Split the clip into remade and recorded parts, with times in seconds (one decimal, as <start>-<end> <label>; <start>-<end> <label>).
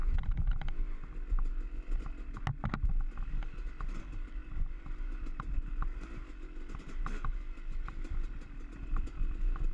0.0-4.0 recorded; 4.0-4.4 remade; 4.4-9.0 recorded; 9.0-9.7 remade